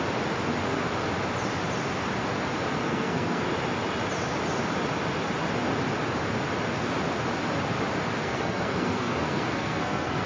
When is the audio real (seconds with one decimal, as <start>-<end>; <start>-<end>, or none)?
0.0-2.7; 3.4-8.2